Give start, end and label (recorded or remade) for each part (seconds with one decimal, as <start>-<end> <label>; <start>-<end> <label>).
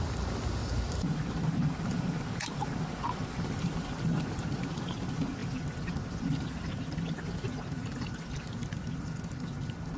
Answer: 0.0-0.6 recorded; 0.6-3.7 remade; 3.7-10.0 recorded